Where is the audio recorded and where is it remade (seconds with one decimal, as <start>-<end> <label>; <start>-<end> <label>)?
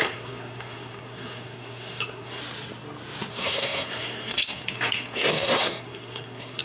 0.0-2.4 remade; 2.4-3.3 recorded; 3.3-6.6 remade